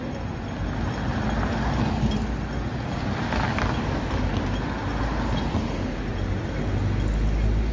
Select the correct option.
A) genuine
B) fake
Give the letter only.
A